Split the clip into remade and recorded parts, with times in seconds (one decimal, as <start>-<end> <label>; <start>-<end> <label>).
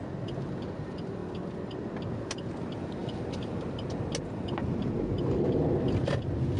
0.0-6.6 recorded